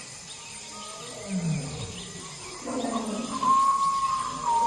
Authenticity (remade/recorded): recorded